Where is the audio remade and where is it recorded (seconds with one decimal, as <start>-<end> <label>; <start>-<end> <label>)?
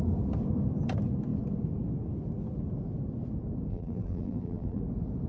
0.0-3.7 recorded; 3.7-4.8 remade; 4.8-5.3 recorded